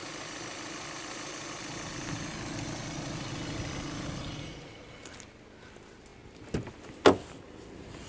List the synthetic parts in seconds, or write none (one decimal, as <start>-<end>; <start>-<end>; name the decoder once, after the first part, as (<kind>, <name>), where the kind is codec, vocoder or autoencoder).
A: none